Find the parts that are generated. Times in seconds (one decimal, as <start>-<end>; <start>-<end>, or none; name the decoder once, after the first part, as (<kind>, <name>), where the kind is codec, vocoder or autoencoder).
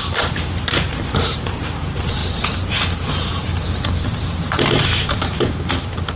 0.0-2.2 (vocoder, BigVGAN v2); 5.7-6.2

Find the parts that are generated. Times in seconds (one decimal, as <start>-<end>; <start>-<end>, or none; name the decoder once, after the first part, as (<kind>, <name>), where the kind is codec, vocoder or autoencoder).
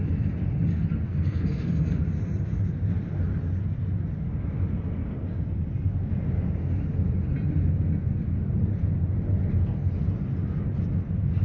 1.1-2.0 (codec, SNAC)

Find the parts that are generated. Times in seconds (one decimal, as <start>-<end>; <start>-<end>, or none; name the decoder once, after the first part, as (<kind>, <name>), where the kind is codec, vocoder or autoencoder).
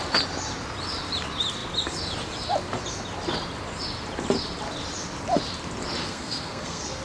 6.0-7.0 (codec, SNAC)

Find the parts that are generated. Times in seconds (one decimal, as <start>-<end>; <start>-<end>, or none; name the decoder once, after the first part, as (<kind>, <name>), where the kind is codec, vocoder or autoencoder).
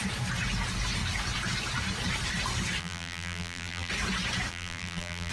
2.8-3.9 (vocoder, BigVGAN v2); 4.5-5.3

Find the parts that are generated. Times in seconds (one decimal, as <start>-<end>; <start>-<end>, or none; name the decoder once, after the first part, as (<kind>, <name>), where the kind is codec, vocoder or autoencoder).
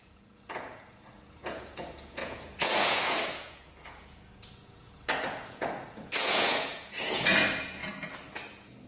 0.0-7.8 (vocoder, Vocos); 8.5-8.9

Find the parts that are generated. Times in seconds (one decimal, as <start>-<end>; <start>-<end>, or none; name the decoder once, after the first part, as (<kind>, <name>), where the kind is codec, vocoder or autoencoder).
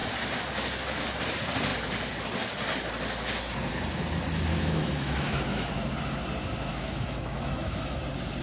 4.5-5.7 (autoencoder, DAC-VAE); 6.7-8.0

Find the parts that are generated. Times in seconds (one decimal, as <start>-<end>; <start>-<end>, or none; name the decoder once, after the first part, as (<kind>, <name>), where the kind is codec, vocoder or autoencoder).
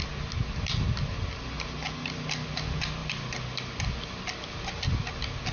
none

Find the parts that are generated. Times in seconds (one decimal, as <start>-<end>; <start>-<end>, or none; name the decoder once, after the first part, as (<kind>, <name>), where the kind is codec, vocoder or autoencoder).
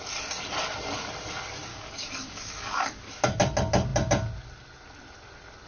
1.7-3.1 (codec, DAC)